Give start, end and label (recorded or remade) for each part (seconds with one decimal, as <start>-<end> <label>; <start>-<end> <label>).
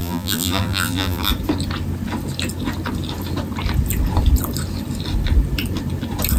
0.0-1.3 remade; 1.3-6.4 recorded